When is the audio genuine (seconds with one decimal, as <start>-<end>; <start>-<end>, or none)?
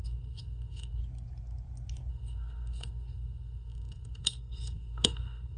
1.0-2.1